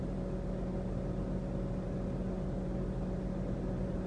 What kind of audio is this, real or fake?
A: real